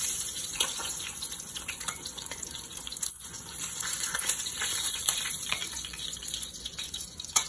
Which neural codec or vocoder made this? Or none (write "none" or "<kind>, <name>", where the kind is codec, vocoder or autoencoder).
vocoder, Vocos